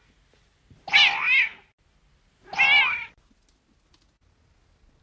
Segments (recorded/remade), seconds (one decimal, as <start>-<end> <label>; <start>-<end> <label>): 0.0-5.0 recorded